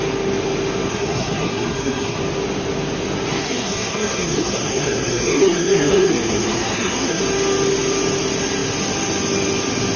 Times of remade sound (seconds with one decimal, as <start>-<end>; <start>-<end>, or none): 0.9-2.2; 3.4-7.2